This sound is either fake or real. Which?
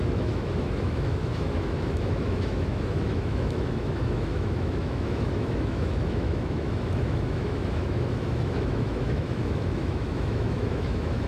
fake